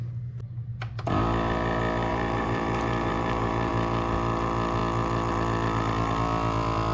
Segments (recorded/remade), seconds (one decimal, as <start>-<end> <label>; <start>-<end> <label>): 0.0-2.1 recorded; 2.1-3.7 remade; 3.7-6.9 recorded